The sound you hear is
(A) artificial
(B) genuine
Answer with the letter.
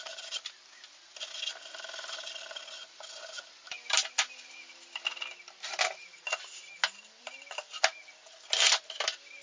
B